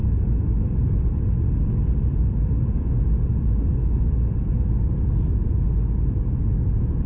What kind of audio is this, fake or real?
real